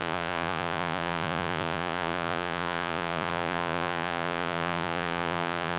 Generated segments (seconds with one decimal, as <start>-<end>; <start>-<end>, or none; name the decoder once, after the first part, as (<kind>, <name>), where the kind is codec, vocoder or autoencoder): 0.0-5.8 (vocoder, Vocos)